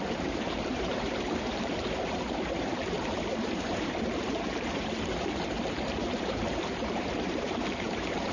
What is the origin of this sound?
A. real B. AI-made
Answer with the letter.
B